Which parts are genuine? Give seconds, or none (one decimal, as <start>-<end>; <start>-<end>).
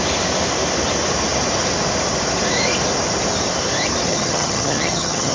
0.0-4.1